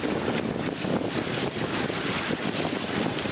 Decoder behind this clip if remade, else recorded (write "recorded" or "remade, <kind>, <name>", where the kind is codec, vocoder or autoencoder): recorded